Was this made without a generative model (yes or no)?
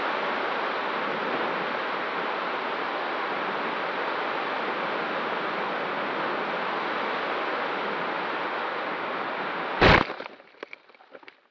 yes